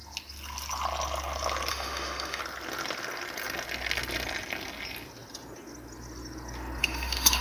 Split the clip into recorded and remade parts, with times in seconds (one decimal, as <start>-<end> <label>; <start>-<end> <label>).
0.0-1.7 recorded; 1.7-2.4 remade; 2.4-6.8 recorded; 6.8-7.4 remade